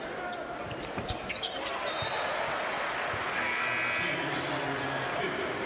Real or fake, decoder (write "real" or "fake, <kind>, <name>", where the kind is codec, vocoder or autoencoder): real